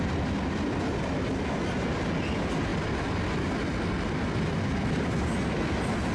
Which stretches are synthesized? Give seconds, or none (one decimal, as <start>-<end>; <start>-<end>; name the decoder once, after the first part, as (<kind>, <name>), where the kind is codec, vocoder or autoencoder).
none